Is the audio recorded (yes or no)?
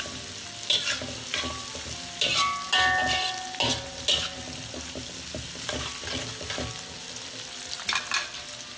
yes